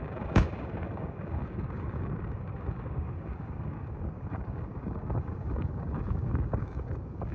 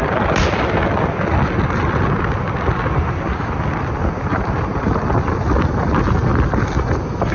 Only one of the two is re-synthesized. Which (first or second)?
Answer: first